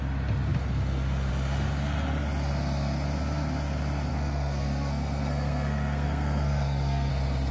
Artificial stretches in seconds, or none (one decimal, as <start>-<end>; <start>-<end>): 4.1-7.1